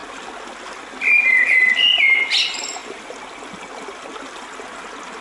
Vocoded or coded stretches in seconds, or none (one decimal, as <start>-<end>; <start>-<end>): none